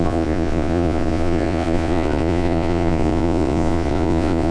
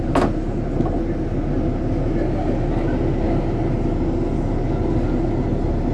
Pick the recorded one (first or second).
second